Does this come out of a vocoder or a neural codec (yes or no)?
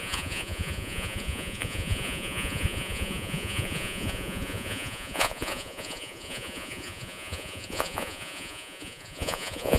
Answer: yes